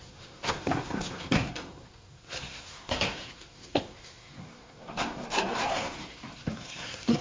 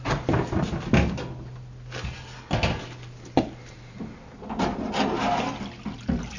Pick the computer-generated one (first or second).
first